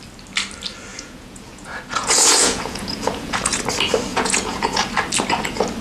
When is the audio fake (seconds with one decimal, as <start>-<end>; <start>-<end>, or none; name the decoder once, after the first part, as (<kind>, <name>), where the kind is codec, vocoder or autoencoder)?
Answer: 0.9-3.6 (vocoder, Vocos); 4.1-4.9